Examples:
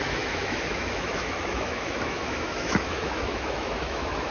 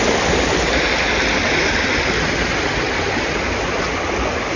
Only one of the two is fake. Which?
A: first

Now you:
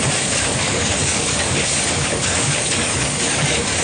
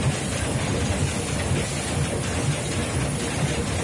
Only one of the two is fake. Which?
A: first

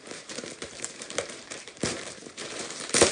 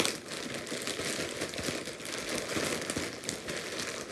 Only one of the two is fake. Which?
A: first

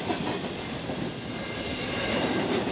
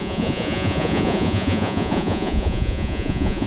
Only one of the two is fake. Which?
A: second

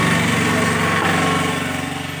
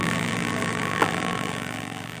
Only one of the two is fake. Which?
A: second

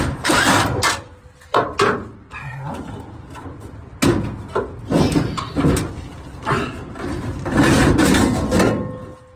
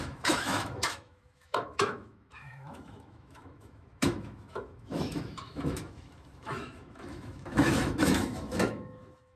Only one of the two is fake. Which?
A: second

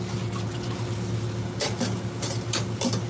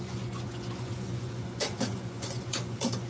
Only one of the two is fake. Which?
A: second